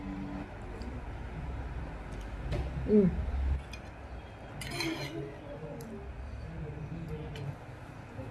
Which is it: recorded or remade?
recorded